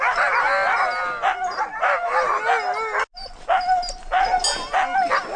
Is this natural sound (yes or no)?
yes